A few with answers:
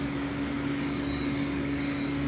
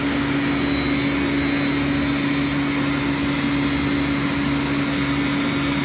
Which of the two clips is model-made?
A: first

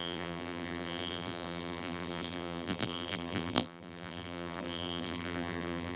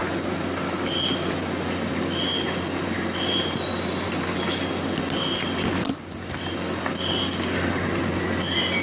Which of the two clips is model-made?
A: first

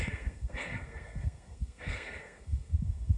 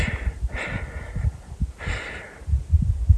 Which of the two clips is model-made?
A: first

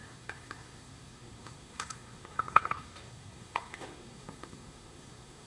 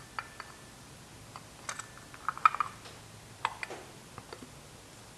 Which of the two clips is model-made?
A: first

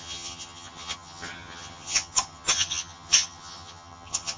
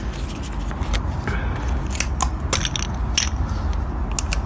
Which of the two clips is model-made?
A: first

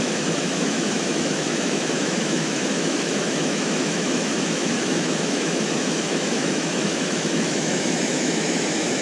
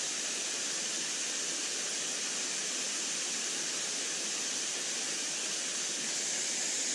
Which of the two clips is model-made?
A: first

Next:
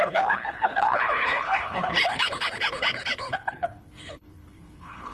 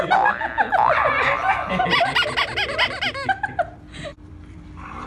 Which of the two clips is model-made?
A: first